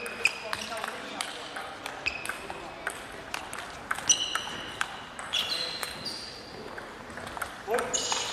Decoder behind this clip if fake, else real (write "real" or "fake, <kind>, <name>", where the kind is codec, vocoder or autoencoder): real